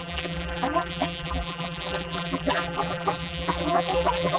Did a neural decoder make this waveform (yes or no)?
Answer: yes